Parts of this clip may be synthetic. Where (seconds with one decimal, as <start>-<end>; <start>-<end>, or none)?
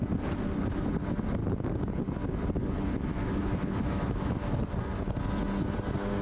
3.1-4.7